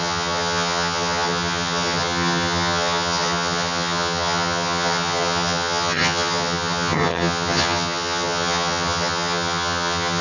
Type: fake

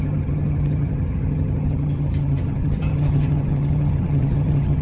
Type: fake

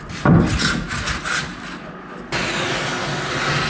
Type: real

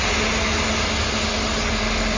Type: real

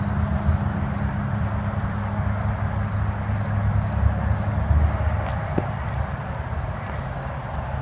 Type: real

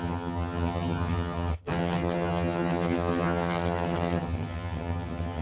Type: fake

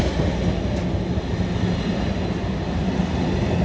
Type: real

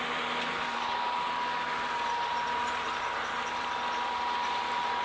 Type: real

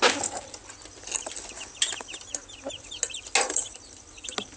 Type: real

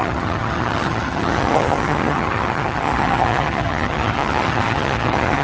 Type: fake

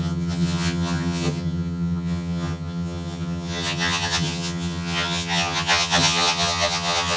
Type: fake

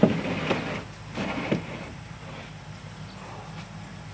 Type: real